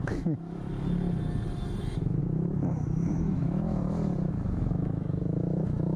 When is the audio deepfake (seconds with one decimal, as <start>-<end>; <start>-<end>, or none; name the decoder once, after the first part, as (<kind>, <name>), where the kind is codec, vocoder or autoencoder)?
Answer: 0.0-0.7 (autoencoder, DAC-VAE); 1.8-6.0